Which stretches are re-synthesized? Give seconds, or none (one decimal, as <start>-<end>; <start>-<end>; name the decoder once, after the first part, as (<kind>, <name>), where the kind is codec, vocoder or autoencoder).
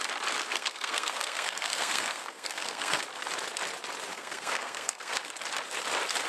0.5-3.0 (codec, SNAC); 4.1-5.1